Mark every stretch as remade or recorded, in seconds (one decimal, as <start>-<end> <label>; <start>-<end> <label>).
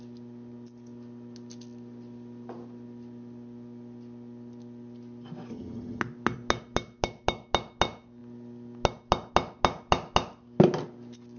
0.0-5.5 recorded; 5.5-6.0 remade; 6.0-11.4 recorded